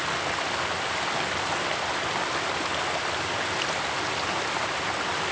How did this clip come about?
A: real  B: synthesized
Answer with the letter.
A